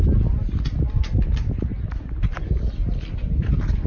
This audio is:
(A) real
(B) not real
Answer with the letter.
A